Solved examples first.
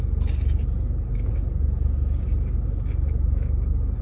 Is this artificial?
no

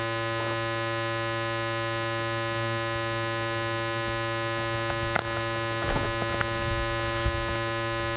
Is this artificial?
no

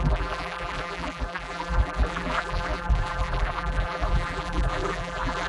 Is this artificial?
yes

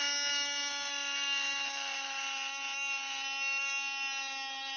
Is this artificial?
no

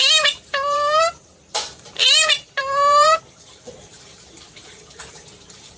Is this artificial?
yes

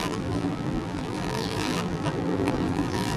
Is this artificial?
yes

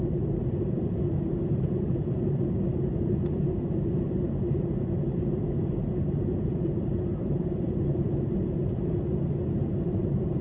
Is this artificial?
yes